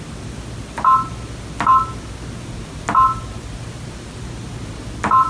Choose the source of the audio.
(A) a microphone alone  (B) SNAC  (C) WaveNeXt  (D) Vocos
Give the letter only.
A